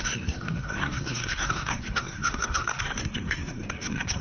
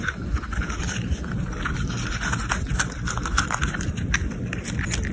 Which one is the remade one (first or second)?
first